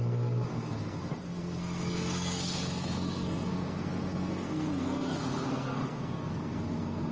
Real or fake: fake